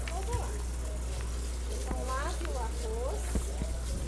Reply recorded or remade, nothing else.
recorded